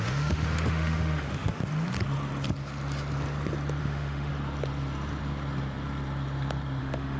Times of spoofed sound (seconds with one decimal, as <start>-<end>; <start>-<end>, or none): 0.0-1.6; 3.8-4.3; 6.8-7.2